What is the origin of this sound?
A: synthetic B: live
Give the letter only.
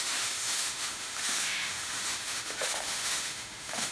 A